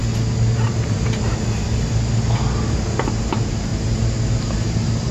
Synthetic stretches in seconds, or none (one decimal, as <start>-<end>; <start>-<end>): 0.9-1.3; 3.2-3.7; 4.4-5.1